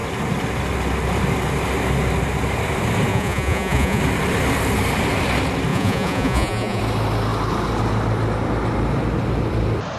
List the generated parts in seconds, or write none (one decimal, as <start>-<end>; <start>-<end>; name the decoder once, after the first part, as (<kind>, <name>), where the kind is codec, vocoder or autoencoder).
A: 3.1-4.0 (vocoder, Vocos); 5.7-6.8

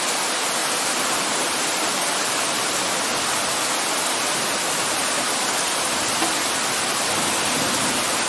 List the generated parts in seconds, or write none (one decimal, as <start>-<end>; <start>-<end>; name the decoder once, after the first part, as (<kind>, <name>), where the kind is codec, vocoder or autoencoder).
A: 0.6-2.7 (vocoder, BigVGAN v2)